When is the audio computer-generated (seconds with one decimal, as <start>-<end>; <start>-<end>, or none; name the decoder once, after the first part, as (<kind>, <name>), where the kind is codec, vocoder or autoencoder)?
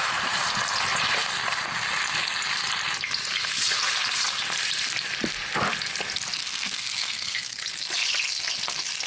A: 6.4-7.6 (codec, SNAC)